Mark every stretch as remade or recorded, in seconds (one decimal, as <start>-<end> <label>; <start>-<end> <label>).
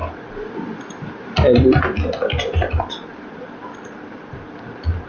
0.0-5.1 recorded